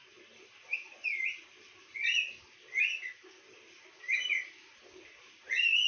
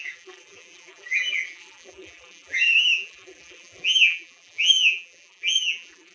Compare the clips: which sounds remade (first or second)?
second